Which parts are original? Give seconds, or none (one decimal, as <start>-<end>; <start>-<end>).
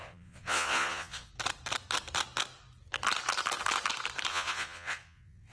1.3-4.3